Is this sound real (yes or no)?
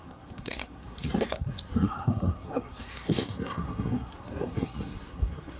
no